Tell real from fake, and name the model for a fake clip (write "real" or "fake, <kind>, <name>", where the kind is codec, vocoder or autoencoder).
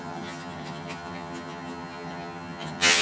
fake, vocoder, HiFi-GAN